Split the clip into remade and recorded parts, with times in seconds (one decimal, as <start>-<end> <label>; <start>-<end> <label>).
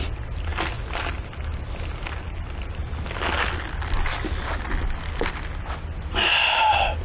0.0-7.0 recorded